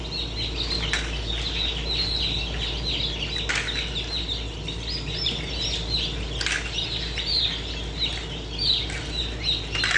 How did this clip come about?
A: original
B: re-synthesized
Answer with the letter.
A